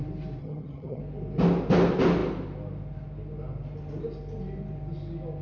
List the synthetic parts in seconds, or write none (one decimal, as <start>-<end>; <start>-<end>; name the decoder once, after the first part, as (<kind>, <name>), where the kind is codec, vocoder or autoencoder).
0.4-1.0 (vocoder, HiFi-GAN)

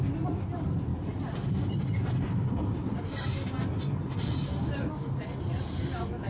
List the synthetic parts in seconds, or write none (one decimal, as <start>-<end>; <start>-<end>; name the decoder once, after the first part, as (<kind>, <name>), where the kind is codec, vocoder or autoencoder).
none

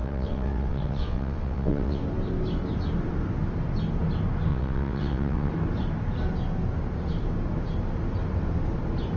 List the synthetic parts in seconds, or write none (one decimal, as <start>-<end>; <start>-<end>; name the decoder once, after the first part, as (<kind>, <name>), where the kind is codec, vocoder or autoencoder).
0.0-2.0 (vocoder, WaveNeXt); 4.5-5.5

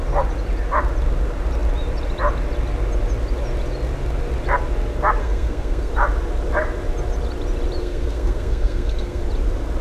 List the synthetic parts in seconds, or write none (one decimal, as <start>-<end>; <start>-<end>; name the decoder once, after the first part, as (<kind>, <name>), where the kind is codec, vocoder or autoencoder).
5.2-5.9 (codec, SNAC); 7.8-9.2

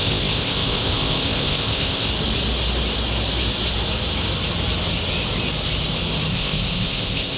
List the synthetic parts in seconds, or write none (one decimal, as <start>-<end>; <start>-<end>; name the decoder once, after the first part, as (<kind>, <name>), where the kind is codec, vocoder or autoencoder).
0.0-2.1 (codec, ZipCodec); 6.3-7.4